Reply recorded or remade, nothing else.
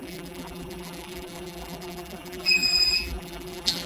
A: remade